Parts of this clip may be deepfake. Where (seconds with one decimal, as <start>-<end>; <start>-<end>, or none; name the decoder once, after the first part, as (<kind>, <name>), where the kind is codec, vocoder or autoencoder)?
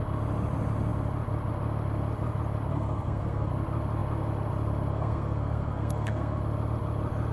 2.7-3.5 (codec, SNAC); 4.9-6.4